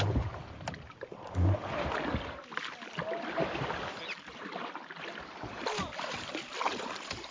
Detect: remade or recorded remade